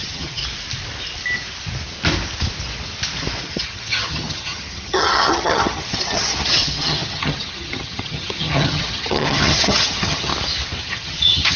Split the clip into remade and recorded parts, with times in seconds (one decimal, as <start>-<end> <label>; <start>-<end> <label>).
0.0-0.4 remade; 0.4-3.5 recorded; 3.5-10.3 remade; 10.3-10.8 recorded; 10.8-11.6 remade